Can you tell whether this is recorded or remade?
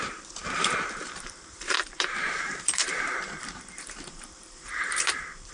remade